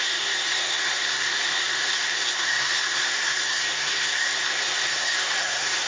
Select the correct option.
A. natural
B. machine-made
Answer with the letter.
B